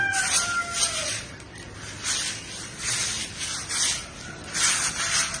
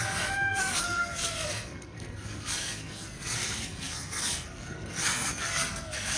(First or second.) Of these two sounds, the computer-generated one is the second